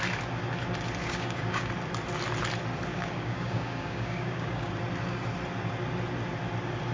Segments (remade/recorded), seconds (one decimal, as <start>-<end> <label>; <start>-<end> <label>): 0.0-1.0 recorded; 1.0-1.7 remade; 1.7-2.9 recorded; 2.9-4.7 remade; 4.7-6.9 recorded